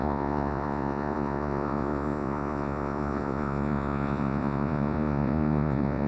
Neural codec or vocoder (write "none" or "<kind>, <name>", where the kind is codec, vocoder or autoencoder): vocoder, Vocos